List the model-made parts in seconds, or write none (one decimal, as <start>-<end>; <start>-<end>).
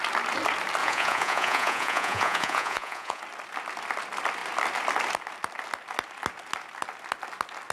0.8-3.2